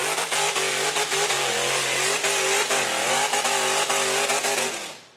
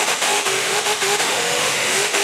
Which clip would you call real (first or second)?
first